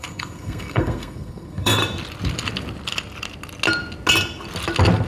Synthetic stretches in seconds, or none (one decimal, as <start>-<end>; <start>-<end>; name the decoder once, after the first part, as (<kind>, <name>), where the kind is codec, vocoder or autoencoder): 0.0-1.8 (codec, SNAC)